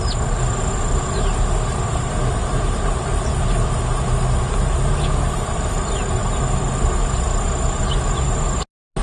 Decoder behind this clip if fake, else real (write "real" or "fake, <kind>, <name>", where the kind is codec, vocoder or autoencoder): real